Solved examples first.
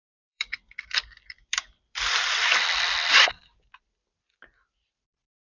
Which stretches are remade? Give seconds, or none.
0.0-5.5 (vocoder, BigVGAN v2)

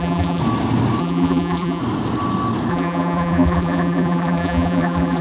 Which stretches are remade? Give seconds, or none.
0.0-0.4 (vocoder, BigVGAN v2); 1.0-1.8; 2.7-5.2

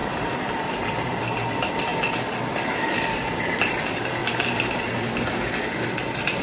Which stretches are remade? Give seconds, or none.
0.0-1.9 (vocoder, BigVGAN v2); 2.7-4.2; 5.9-6.4

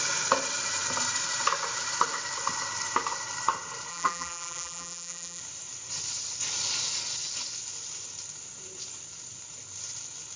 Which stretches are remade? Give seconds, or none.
3.9-5.4 (vocoder, BigVGAN v2)

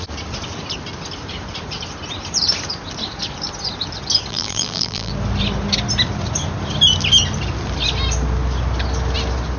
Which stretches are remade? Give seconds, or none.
4.3-5.1 (vocoder, BigVGAN v2)

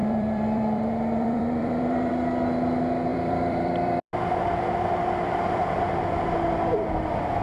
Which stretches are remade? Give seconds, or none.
0.0-2.1 (vocoder, BigVGAN v2); 3.1-4.1

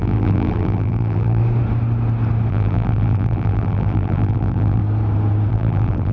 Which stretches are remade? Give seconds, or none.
0.0-1.4 (vocoder, BigVGAN v2); 2.5-4.8; 5.5-6.1